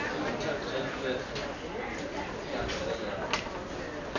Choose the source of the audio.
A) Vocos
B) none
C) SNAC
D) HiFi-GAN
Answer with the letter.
B